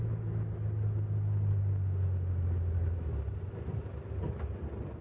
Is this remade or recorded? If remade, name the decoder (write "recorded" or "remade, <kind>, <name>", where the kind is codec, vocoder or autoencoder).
recorded